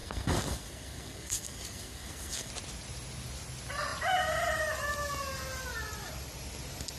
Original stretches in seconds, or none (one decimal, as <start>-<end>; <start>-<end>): 2.5-7.0